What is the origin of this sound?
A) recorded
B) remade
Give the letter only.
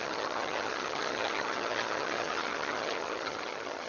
B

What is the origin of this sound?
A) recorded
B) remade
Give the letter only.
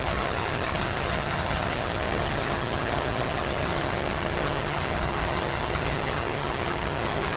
B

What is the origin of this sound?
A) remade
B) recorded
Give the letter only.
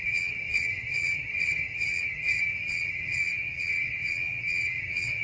A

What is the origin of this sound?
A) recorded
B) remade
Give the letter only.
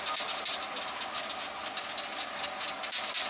A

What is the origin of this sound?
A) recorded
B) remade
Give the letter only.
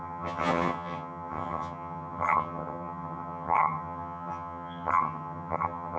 B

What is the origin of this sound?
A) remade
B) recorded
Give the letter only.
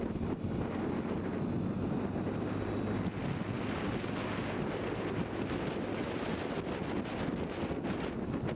B